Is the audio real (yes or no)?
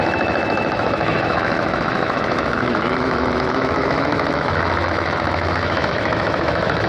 no